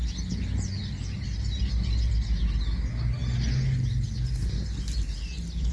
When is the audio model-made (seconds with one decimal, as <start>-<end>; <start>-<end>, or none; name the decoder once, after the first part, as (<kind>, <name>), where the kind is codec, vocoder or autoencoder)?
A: none